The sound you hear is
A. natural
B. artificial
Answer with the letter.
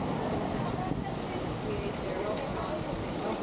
A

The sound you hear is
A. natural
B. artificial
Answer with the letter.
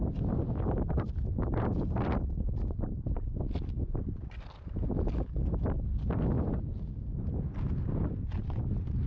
A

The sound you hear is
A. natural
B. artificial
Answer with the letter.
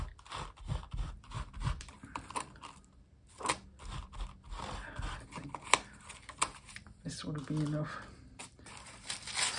A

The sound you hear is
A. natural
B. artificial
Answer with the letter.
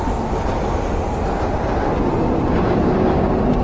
A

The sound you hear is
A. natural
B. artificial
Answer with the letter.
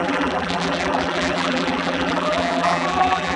B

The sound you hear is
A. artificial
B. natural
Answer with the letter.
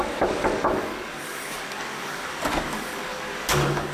A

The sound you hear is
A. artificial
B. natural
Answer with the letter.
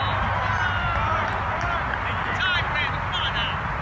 B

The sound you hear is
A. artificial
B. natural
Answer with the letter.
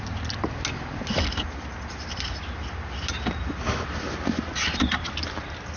B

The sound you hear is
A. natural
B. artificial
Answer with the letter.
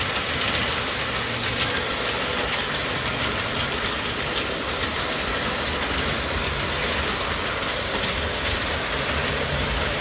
A